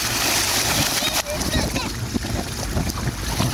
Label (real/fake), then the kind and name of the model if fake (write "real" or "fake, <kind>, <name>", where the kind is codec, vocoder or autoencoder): real